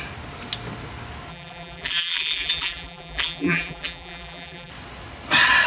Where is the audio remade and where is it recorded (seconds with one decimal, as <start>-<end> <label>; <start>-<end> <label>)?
0.0-1.3 recorded; 1.3-4.7 remade; 4.7-5.7 recorded